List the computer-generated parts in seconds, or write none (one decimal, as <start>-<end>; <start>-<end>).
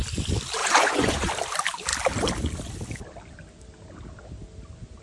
0.6-1.3